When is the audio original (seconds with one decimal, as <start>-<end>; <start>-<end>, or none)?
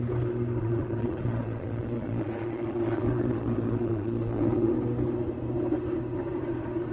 0.0-0.6; 4.7-6.9